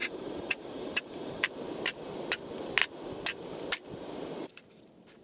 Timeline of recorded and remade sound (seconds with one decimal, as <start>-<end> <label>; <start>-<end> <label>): 0.0-1.5 remade; 1.5-5.2 recorded